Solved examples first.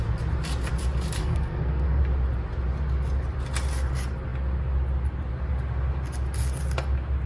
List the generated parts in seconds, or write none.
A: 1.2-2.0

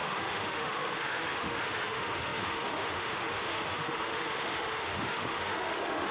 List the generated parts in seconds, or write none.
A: 0.0-6.1

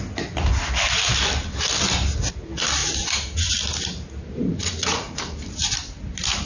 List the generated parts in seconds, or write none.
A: 2.8-3.5; 4.4-5.2

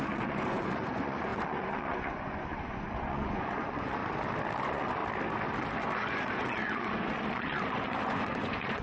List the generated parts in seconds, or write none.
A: 0.0-4.0; 4.6-5.0; 6.1-8.8

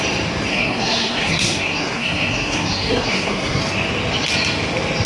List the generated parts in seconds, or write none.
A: 0.5-3.6

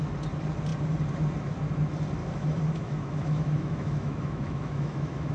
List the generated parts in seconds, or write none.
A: 2.2-5.3

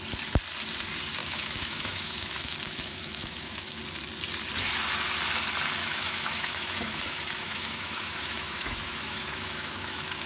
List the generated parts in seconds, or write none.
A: 1.2-3.8; 5.8-10.3